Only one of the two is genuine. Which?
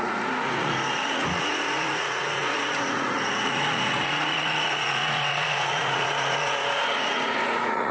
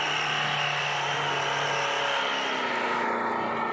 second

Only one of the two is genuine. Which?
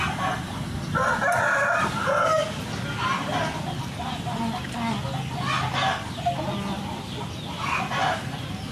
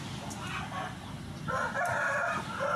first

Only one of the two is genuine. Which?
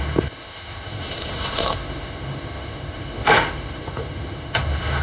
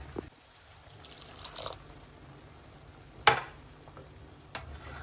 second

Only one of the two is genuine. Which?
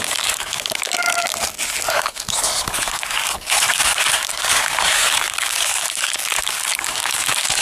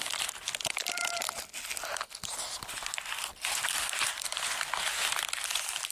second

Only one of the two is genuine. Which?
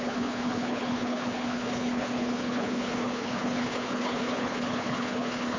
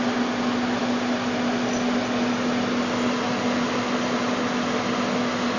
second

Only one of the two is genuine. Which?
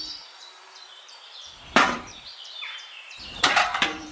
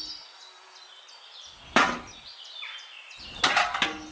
second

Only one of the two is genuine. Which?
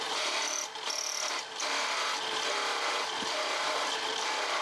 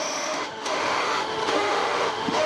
first